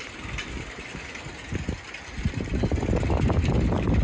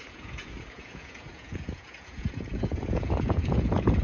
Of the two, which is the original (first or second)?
first